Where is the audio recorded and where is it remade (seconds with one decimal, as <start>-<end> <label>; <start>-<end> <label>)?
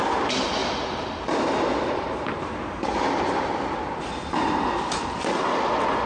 0.0-6.1 recorded